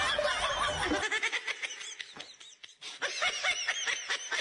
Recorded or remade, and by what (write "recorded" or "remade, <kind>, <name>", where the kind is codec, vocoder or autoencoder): recorded